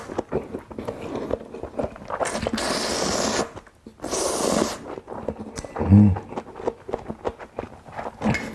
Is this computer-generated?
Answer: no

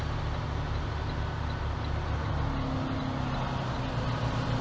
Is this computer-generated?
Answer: no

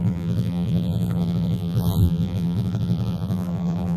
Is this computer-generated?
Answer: yes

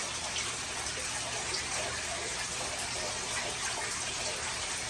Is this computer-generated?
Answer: no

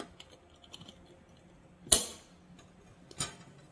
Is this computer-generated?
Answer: no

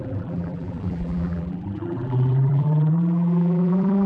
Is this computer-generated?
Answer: yes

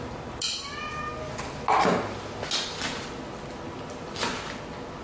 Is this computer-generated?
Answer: no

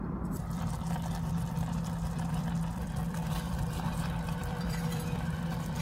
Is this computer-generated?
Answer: yes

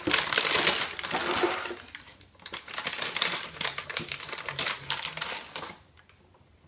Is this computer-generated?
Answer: no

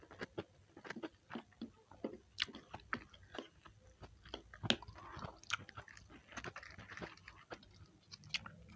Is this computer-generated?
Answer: no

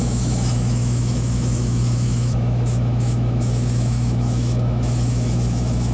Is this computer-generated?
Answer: yes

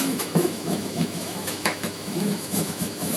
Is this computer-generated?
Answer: yes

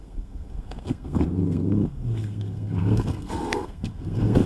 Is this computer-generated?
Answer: yes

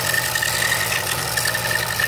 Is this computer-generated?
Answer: no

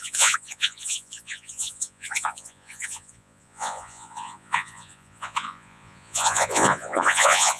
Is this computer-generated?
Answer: yes